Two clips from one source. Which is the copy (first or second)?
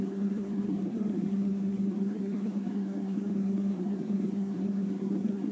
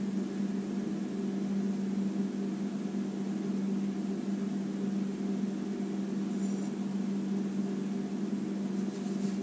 first